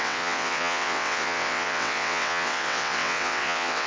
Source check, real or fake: fake